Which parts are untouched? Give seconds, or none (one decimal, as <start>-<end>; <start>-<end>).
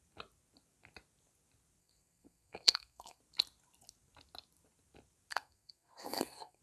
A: 0.0-1.8; 3.2-5.3